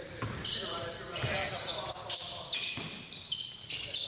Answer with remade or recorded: recorded